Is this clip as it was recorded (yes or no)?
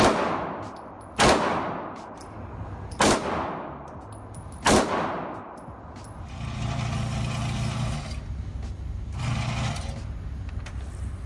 yes